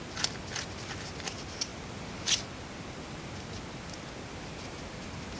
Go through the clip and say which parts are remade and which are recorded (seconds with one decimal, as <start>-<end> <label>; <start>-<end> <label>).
0.0-5.4 recorded